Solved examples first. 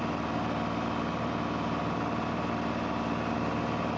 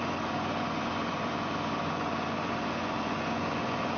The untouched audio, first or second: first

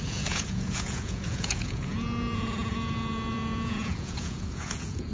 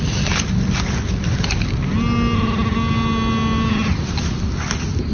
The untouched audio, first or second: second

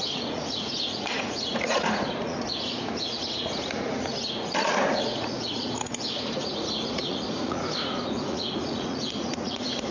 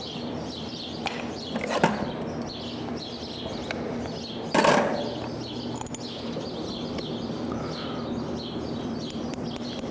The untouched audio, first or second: second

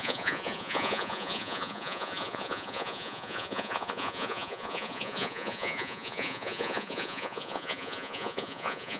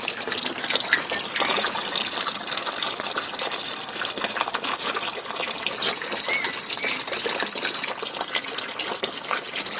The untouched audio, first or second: second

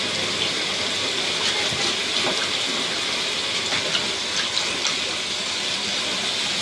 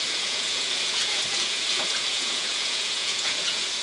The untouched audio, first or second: first